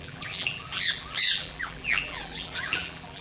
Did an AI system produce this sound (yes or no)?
yes